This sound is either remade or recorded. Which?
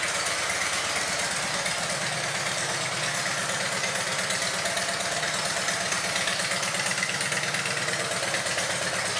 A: recorded